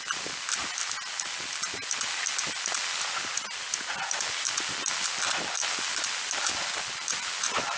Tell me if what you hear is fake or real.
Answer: real